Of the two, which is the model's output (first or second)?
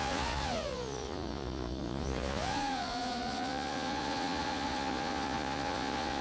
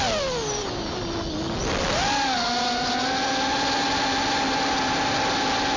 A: first